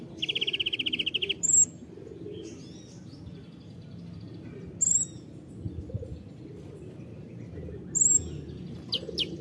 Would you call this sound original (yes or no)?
yes